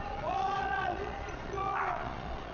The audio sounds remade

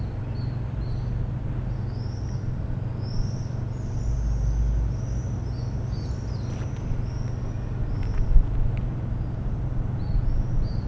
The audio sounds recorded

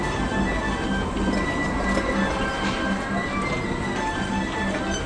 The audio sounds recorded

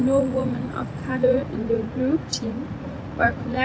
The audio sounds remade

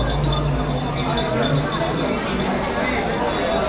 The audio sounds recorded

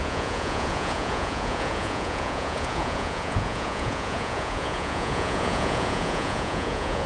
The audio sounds remade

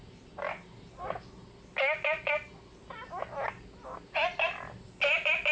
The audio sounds recorded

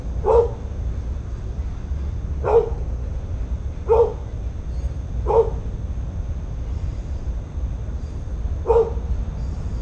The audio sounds recorded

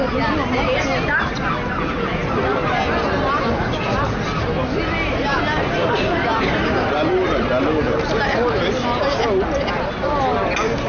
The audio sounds recorded